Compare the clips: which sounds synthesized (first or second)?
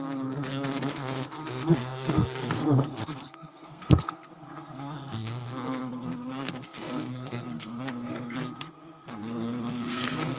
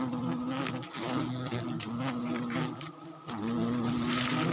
first